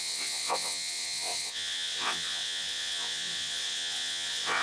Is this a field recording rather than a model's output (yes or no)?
no